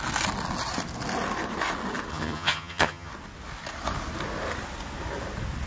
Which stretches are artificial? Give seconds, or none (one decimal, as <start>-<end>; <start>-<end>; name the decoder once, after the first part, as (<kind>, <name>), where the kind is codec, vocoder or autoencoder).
2.1-3.1 (vocoder, HiFi-GAN)